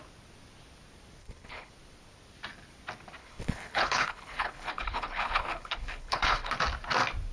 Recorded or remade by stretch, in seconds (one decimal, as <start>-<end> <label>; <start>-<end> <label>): 0.0-1.2 recorded; 1.2-1.7 remade; 1.7-3.2 recorded; 3.2-6.5 remade; 6.5-7.3 recorded